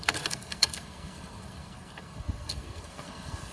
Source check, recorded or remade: remade